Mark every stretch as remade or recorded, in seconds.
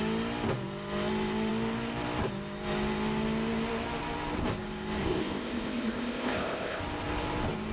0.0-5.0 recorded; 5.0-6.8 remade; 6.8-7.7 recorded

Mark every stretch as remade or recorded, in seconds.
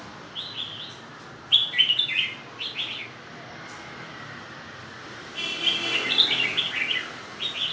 0.0-7.7 recorded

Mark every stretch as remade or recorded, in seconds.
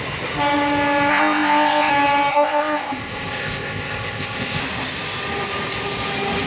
0.0-1.1 recorded; 1.1-1.9 remade; 1.9-2.3 recorded; 2.3-4.6 remade; 4.6-6.5 recorded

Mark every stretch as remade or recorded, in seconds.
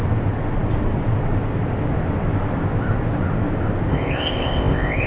0.0-3.9 recorded; 3.9-5.1 remade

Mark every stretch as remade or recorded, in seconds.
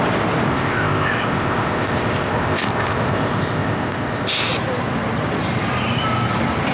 0.0-0.5 recorded; 0.5-4.5 remade; 4.5-6.7 recorded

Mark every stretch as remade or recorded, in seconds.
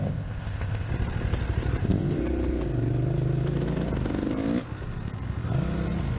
0.0-0.9 remade; 0.9-1.8 recorded; 1.8-2.2 remade; 2.2-6.2 recorded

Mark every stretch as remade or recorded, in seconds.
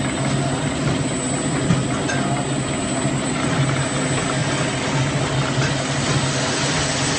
0.0-7.2 recorded